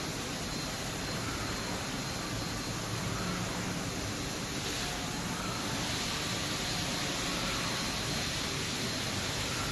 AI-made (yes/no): no